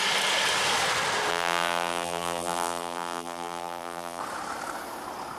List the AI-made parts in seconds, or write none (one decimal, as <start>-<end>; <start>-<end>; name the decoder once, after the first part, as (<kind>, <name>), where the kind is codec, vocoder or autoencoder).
1.3-4.2 (vocoder, BigVGAN v2)